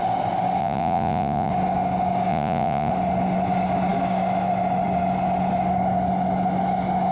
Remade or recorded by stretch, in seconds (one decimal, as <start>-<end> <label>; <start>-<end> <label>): 0.0-0.6 recorded; 0.6-1.5 remade; 1.5-2.3 recorded; 2.3-2.9 remade; 2.9-7.1 recorded